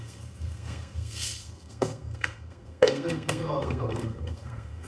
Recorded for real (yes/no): no